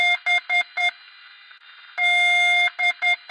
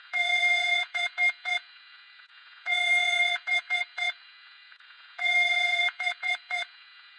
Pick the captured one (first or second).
first